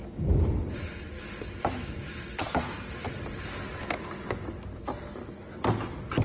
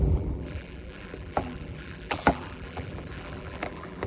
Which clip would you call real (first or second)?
first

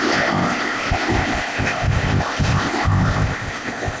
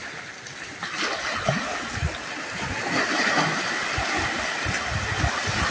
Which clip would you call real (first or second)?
second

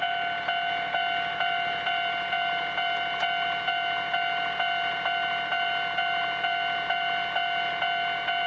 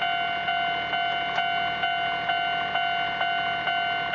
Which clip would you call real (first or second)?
second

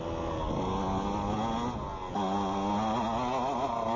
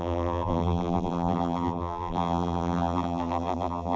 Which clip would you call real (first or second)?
first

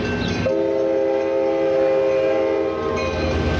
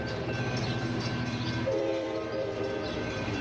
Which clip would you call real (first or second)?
first